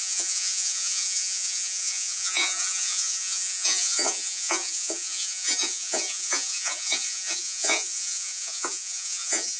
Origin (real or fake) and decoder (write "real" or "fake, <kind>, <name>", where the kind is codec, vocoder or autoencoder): fake, vocoder, Vocos